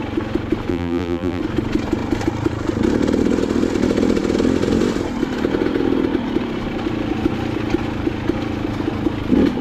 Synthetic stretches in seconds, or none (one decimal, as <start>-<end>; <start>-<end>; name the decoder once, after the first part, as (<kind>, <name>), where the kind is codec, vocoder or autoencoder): 0.7-1.4 (vocoder, BigVGAN v2)